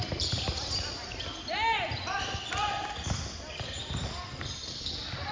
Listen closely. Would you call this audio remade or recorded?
recorded